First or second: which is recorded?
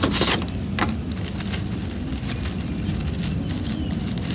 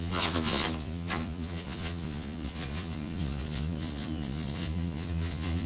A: first